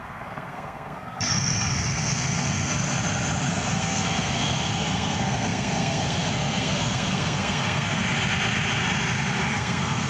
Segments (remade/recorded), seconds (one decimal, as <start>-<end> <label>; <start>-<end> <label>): 0.0-2.7 remade; 2.7-3.5 recorded; 3.5-8.0 remade; 8.0-9.4 recorded; 9.4-10.1 remade